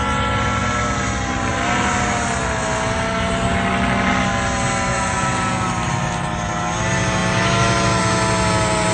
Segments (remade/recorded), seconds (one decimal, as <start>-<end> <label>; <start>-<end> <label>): 0.0-4.9 recorded; 4.9-5.7 remade; 5.7-8.9 recorded